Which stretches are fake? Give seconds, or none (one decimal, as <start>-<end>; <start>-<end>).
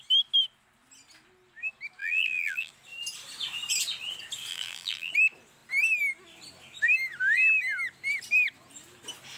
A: 2.0-2.7; 4.5-5.1